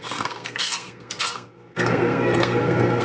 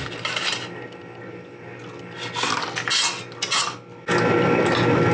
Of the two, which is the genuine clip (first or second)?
second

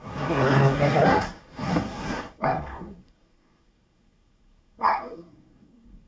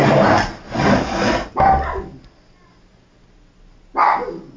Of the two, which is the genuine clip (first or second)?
second